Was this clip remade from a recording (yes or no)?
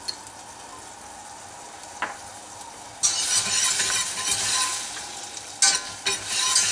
no